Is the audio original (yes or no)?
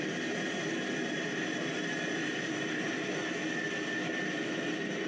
yes